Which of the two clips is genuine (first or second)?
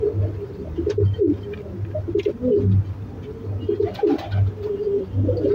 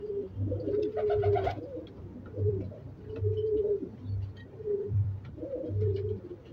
first